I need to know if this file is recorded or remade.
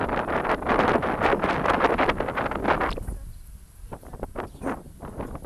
recorded